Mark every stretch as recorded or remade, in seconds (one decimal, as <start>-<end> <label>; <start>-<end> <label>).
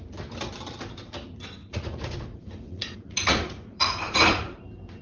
0.0-1.6 recorded; 1.6-4.6 remade; 4.6-5.0 recorded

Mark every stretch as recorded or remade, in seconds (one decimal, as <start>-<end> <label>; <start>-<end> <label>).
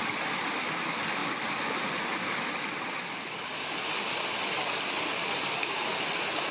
0.0-6.5 recorded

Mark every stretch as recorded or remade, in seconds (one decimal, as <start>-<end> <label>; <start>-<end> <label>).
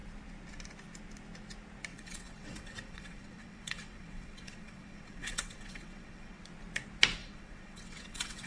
0.0-1.9 recorded; 1.9-6.4 remade; 6.4-7.2 recorded; 7.2-8.5 remade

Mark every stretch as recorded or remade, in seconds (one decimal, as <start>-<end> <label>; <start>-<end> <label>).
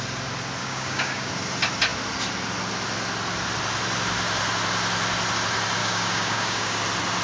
0.0-0.6 recorded; 0.6-1.3 remade; 1.3-5.8 recorded; 5.8-6.8 remade; 6.8-7.2 recorded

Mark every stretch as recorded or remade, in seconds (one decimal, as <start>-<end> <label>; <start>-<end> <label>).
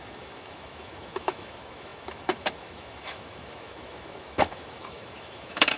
0.0-5.8 remade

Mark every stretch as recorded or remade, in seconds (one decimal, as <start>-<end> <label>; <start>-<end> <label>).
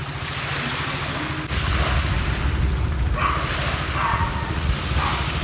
0.0-4.1 recorded; 4.1-4.7 remade; 4.7-5.4 recorded